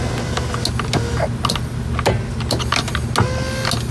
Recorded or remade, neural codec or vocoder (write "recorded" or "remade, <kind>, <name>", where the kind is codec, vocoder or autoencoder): recorded